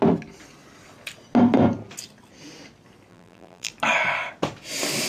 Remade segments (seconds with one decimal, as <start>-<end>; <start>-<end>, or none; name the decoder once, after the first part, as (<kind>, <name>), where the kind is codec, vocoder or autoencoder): 3.1-3.7 (vocoder, BigVGAN v2)